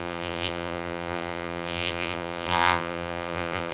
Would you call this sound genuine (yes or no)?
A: no